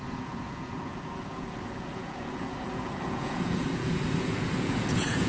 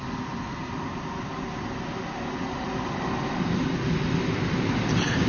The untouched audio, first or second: second